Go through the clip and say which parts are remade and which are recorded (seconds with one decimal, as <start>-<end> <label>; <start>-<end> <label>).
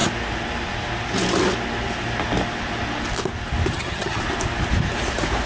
0.0-3.7 recorded; 3.7-4.2 remade; 4.2-5.5 recorded